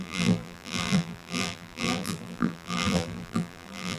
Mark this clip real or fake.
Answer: fake